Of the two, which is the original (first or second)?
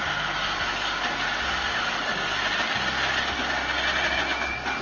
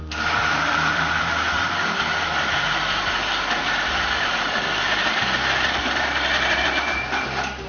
first